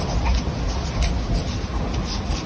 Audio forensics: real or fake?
real